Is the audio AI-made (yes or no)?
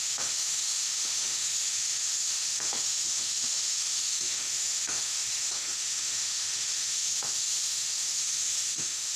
yes